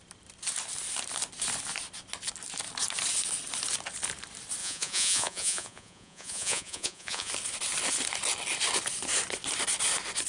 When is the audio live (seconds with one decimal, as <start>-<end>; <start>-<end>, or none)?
0.0-4.6; 7.3-10.3